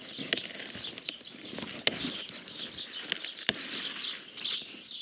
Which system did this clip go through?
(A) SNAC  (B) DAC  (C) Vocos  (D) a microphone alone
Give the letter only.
D